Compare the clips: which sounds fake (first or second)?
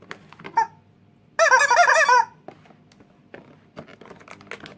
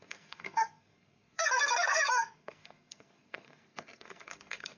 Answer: second